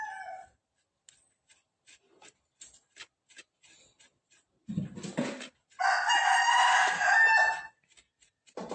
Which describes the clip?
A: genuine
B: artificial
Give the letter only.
A